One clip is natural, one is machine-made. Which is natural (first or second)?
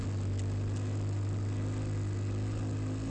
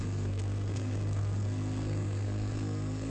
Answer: first